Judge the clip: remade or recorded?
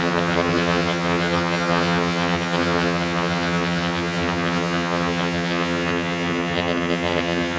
remade